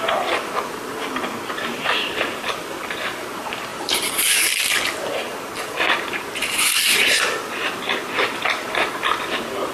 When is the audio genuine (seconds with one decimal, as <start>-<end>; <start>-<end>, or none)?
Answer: 0.0-3.7; 4.5-9.7